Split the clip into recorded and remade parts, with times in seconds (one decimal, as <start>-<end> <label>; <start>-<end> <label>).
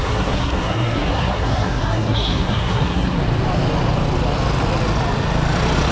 0.0-3.2 remade; 3.2-5.9 recorded